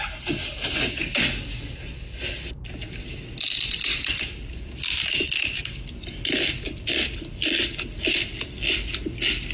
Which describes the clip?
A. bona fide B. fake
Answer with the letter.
A